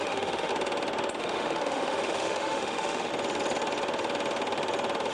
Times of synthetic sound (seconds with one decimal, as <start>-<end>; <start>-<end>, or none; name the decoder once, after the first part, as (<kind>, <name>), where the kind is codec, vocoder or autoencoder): 0.0-0.5 (autoencoder, DAC-VAE); 1.2-3.1